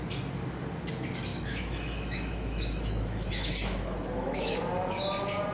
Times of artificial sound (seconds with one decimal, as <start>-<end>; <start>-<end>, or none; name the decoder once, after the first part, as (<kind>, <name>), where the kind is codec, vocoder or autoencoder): 1.3-4.6 (autoencoder, DAC-VAE)